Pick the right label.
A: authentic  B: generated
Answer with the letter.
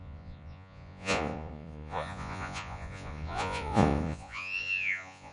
B